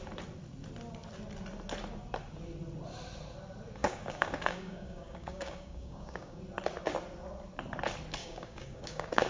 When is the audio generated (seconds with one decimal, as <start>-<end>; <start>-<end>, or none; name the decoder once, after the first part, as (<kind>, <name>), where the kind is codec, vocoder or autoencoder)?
3.8-6.4 (codec, DAC); 8.2-9.3